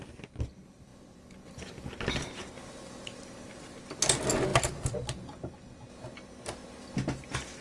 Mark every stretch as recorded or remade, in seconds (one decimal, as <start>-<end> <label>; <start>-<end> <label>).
0.0-7.6 recorded